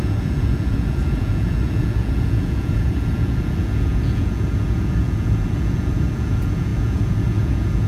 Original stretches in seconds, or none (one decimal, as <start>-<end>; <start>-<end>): none

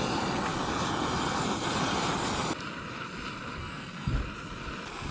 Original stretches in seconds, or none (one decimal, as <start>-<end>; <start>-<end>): 0.0-3.6; 4.1-5.1

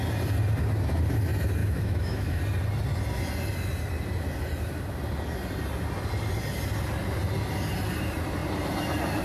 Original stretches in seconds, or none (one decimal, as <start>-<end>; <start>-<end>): 0.0-1.6; 2.4-9.2

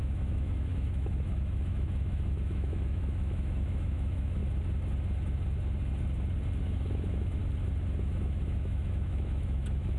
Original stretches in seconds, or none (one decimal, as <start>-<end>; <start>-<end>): 4.4-6.6; 7.4-8.0

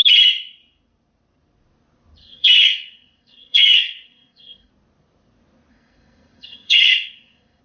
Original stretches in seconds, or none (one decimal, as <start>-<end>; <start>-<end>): 0.0-2.2; 4.7-5.7

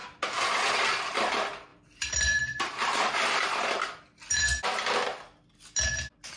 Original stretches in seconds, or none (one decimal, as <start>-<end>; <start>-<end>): 0.0-1.7; 3.9-6.4

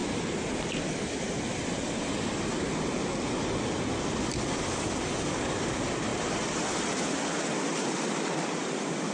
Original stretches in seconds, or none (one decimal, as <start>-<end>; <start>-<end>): 0.0-6.1